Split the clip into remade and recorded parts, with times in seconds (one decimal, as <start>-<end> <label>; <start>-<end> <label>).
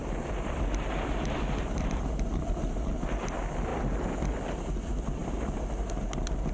0.0-2.9 remade; 2.9-3.7 recorded; 3.7-4.5 remade; 4.5-6.5 recorded